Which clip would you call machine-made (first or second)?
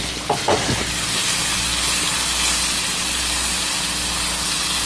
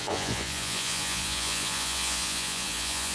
second